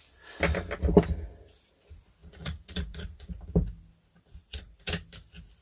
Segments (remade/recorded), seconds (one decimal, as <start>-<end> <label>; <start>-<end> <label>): 0.0-2.2 recorded; 2.2-3.4 remade; 3.4-4.3 recorded; 4.3-4.9 remade; 4.9-5.6 recorded